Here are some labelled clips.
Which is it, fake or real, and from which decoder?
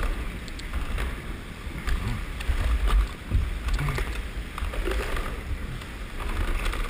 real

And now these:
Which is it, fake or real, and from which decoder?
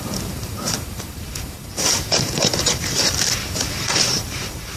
fake, vocoder, BigVGAN v2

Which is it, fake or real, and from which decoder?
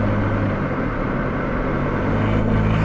real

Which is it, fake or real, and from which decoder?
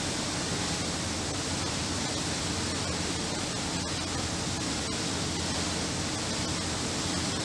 real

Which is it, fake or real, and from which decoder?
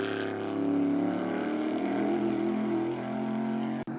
real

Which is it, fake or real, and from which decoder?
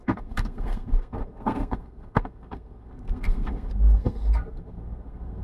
fake, codec, SNAC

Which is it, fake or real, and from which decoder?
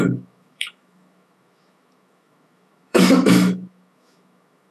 fake, autoencoder, DAC-VAE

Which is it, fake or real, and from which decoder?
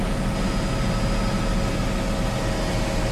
real